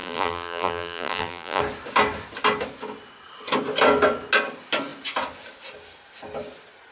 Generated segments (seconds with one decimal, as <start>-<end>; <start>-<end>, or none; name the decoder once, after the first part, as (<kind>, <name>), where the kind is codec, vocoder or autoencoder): 0.0-1.6 (vocoder, BigVGAN v2)